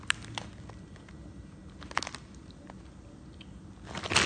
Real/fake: real